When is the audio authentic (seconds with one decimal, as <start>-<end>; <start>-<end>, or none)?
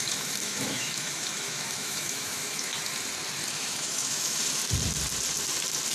2.7-3.5; 4.6-5.9